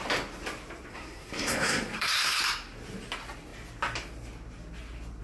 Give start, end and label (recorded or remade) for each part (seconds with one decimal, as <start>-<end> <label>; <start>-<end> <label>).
0.0-0.9 recorded; 0.9-2.4 remade; 2.4-5.2 recorded

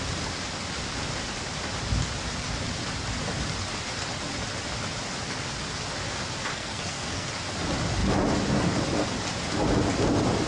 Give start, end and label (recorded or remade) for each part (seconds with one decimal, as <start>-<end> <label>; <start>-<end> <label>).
0.0-6.5 recorded; 6.5-7.3 remade; 7.3-10.5 recorded

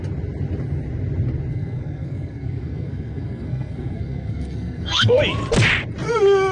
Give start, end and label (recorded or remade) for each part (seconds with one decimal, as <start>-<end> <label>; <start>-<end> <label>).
0.0-1.5 recorded; 1.5-5.2 remade; 5.2-6.5 recorded

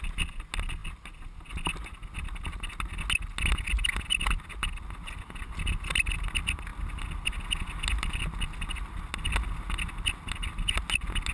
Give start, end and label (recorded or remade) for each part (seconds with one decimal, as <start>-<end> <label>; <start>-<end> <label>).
0.0-11.3 recorded

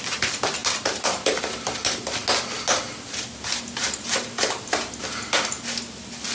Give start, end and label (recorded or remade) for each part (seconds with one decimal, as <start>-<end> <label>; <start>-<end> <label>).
0.0-6.3 recorded

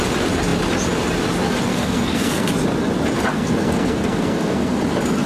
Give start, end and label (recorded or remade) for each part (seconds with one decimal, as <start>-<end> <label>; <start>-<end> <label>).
0.0-1.7 recorded; 1.7-2.5 remade; 2.5-3.3 recorded; 3.3-4.8 remade; 4.8-5.3 recorded